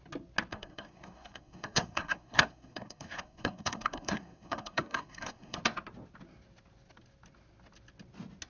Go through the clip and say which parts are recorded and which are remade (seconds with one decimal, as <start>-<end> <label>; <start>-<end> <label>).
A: 0.0-0.5 recorded; 0.5-5.6 remade; 5.6-8.5 recorded